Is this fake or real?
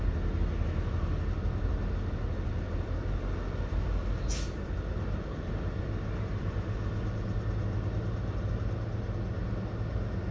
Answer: real